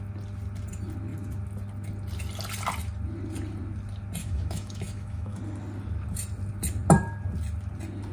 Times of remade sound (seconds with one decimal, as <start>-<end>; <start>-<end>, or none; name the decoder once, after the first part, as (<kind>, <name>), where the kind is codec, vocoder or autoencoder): 4.2-5.4 (autoencoder, DAC-VAE)